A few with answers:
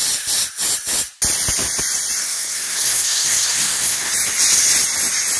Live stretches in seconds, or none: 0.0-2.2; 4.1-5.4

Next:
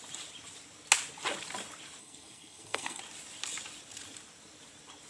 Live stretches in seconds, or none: 0.0-2.0; 3.0-5.1

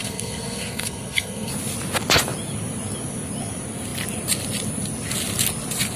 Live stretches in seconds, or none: 1.5-6.0

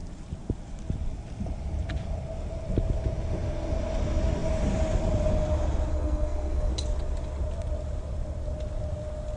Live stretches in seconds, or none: 0.0-5.9; 6.7-9.4

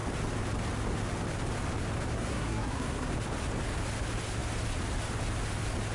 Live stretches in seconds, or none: 0.0-2.1; 3.1-5.9